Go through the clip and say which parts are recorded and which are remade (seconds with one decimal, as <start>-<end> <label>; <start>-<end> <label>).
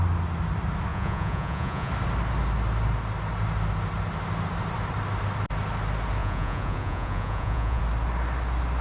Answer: 0.0-0.9 recorded; 0.9-1.9 remade; 1.9-6.2 recorded; 6.2-7.8 remade; 7.8-8.8 recorded